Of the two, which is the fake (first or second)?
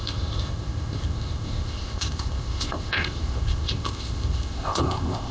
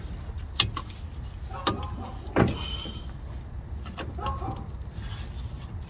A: first